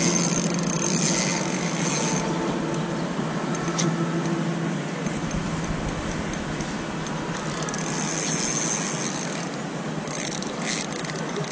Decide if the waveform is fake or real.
real